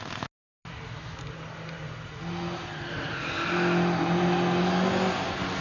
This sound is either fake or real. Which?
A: real